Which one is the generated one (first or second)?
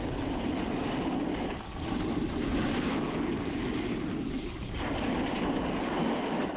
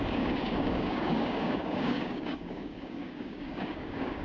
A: second